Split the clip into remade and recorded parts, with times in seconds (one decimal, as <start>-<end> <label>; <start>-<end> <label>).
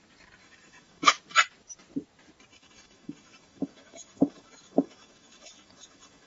0.0-0.4 recorded; 0.4-1.1 remade; 1.1-2.5 recorded; 2.5-6.3 remade